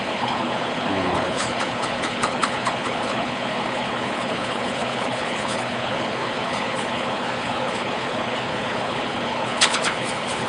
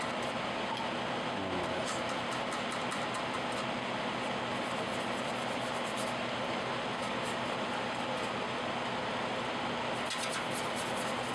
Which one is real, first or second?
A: second